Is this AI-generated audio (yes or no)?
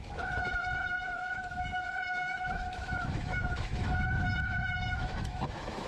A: yes